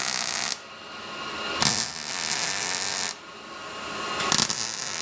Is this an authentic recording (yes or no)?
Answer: yes